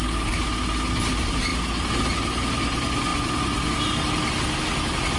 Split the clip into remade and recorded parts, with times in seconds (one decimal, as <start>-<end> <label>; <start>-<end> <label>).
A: 0.0-5.2 recorded